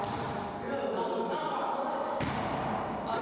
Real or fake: real